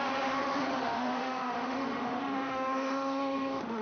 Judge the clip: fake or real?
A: fake